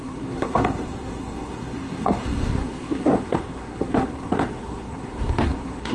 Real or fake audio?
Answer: fake